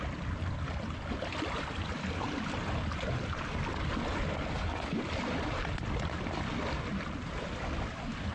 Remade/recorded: recorded